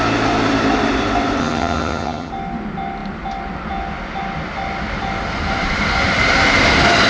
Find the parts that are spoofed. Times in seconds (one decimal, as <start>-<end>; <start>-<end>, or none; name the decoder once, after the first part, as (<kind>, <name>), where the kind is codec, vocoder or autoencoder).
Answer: 1.4-2.3 (vocoder, HiFi-GAN)